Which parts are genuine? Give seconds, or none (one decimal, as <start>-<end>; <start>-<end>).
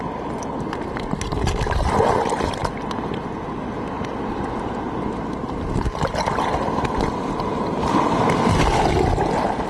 0.0-9.7